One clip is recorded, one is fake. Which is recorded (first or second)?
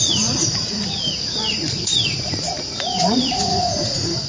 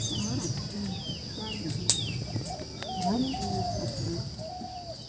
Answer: second